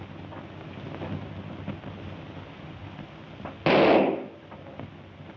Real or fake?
real